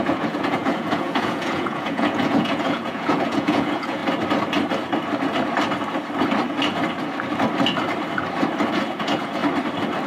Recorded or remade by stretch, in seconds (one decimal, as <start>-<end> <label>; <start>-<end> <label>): 0.0-4.0 remade; 4.0-8.7 recorded; 8.7-9.4 remade; 9.4-10.1 recorded